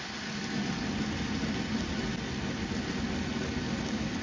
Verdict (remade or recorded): recorded